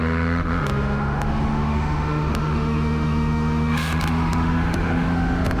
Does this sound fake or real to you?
fake